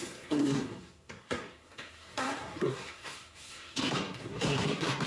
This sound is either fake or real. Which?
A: fake